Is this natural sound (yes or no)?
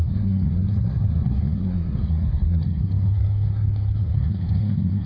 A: no